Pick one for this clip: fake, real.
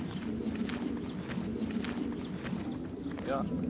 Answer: real